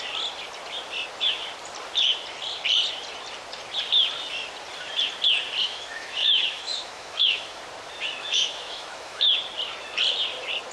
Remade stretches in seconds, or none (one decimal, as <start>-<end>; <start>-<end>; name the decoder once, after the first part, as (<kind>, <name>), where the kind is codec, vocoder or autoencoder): 5.6-7.6 (autoencoder, DAC-VAE); 8.2-9.2